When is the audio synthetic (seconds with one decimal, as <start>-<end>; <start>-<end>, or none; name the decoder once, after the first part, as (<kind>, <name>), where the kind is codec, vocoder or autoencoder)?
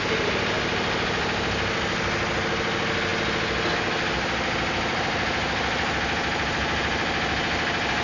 none